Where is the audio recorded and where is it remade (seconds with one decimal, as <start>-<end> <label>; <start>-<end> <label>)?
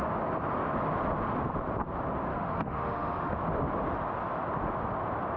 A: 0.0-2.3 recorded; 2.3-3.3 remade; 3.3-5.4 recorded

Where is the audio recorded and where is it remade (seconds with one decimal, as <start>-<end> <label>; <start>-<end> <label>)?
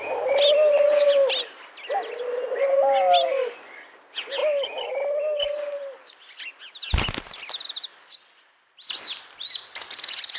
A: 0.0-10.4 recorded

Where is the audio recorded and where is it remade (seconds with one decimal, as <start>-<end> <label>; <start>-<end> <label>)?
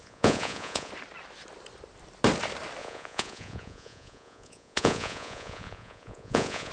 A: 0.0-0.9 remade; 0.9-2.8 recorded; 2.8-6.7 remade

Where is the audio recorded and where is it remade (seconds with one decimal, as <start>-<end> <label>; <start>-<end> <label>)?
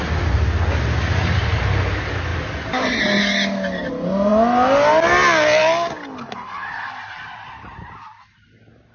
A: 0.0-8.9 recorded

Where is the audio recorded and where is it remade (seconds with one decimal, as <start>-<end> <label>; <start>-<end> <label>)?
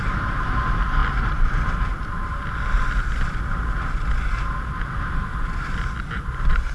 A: 0.0-6.7 recorded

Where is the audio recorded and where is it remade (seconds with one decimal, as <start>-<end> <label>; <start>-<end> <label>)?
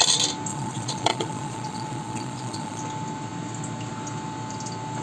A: 0.0-0.5 recorded; 0.5-2.8 remade; 2.8-5.0 recorded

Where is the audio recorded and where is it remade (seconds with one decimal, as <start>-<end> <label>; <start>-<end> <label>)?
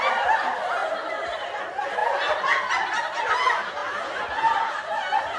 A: 0.0-5.4 recorded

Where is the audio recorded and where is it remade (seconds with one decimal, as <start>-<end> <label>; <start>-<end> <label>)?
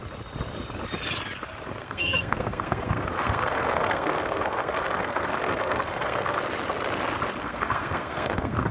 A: 0.0-1.8 recorded; 1.8-6.4 remade; 6.4-7.4 recorded; 7.4-8.7 remade